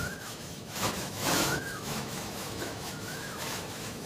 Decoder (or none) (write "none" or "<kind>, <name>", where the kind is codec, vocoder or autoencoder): autoencoder, DAC-VAE